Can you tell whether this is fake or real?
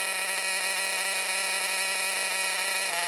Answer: real